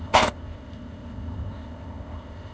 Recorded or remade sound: remade